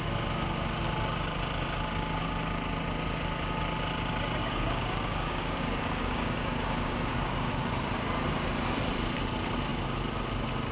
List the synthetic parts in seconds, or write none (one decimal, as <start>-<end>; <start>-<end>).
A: 4.4-7.5

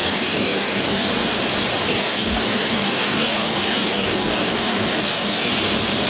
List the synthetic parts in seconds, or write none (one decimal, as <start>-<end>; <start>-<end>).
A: 0.0-1.1; 1.9-5.5

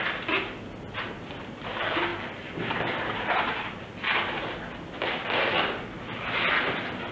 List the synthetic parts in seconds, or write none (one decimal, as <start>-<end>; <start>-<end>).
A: none

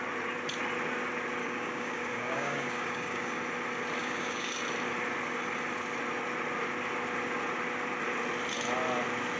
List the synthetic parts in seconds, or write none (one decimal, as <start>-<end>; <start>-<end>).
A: 1.4-3.4; 4.0-4.5

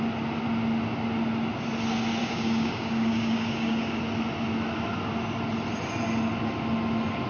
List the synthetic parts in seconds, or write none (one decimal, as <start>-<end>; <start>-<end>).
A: 2.2-4.0

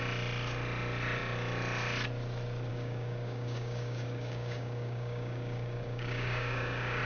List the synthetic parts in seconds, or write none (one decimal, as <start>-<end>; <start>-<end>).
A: 2.7-7.0

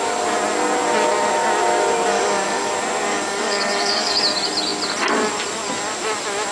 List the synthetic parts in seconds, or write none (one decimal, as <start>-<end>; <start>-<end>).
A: 2.1-2.7; 3.1-4.2

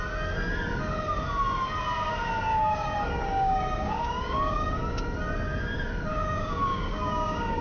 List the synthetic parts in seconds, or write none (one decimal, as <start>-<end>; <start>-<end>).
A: 2.5-4.8; 6.1-7.6